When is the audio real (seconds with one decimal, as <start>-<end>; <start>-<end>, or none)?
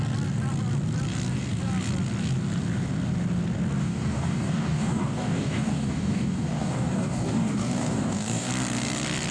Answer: 0.0-3.8; 8.5-9.3